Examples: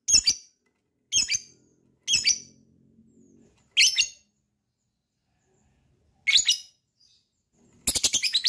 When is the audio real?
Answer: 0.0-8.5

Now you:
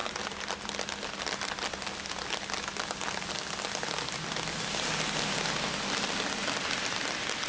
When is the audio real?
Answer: 0.0-7.5

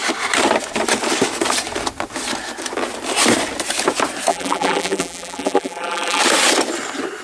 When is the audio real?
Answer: 0.0-4.3; 6.2-7.2

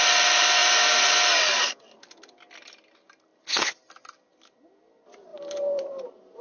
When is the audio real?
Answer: 0.0-5.3; 5.9-6.4

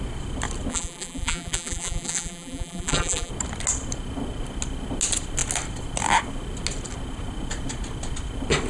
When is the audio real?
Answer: 0.0-0.7; 3.3-8.7